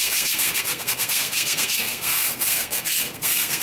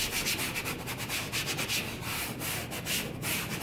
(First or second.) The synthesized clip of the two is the first